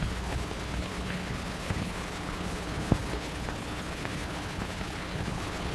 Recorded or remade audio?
remade